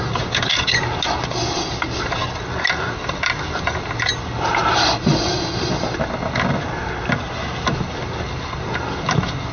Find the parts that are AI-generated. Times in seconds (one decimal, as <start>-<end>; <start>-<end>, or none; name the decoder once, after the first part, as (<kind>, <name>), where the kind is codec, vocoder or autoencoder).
none